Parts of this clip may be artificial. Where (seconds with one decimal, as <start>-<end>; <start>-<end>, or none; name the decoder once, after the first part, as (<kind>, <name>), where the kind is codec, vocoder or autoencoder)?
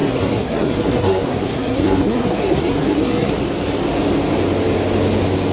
0.0-3.3 (codec, SNAC)